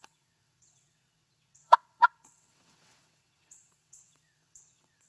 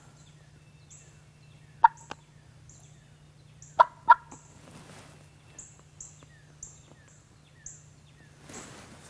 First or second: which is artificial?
first